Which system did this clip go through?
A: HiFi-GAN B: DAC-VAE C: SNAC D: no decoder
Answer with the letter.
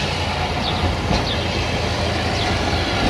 D